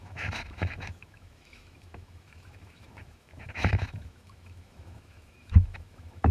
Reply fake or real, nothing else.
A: fake